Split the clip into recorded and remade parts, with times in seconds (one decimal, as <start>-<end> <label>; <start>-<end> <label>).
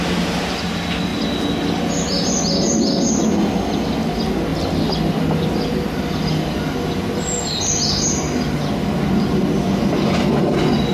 0.0-10.9 recorded